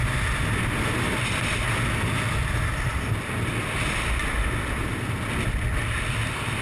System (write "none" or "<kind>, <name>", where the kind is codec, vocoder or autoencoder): none